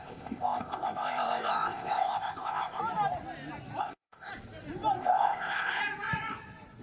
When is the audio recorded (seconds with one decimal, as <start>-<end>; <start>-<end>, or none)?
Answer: 2.8-3.8; 4.3-5.0; 5.8-6.8